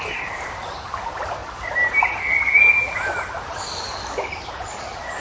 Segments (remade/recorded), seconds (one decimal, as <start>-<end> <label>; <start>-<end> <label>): 0.0-5.2 recorded